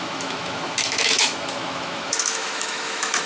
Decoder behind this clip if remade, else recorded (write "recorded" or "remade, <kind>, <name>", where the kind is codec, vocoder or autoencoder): remade, autoencoder, DAC-VAE